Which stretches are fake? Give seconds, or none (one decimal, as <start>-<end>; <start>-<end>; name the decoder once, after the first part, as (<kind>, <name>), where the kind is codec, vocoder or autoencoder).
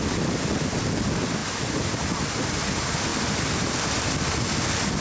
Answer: none